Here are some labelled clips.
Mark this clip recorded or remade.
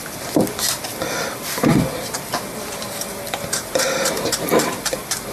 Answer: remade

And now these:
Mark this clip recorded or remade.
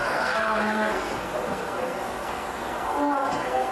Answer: remade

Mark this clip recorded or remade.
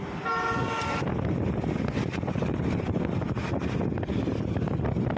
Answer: recorded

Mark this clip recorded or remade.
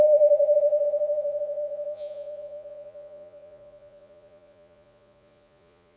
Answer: remade